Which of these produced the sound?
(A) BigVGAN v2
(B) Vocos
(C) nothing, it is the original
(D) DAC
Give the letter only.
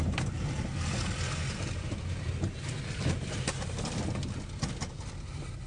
C